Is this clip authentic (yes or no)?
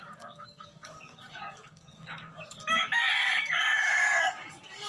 no